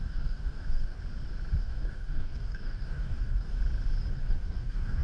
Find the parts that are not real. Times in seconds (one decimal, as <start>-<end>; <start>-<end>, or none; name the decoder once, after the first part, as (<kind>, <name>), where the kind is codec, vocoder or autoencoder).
0.0-1.0 (codec, DAC); 1.6-3.6; 4.1-5.0